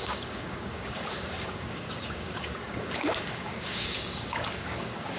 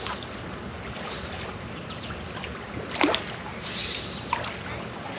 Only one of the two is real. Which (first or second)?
second